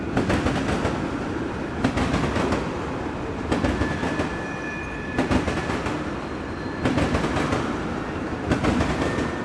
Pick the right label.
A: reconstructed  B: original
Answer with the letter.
B